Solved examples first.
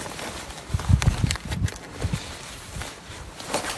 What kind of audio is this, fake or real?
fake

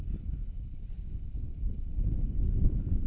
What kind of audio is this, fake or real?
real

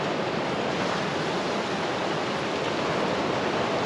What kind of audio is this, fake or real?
fake